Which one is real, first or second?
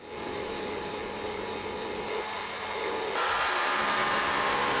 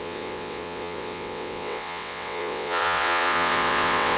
first